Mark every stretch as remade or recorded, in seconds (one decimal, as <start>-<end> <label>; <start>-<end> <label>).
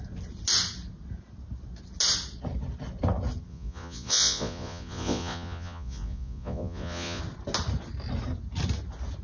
0.0-3.5 recorded; 3.5-7.2 remade; 7.2-9.2 recorded